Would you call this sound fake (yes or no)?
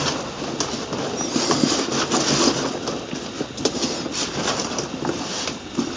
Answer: no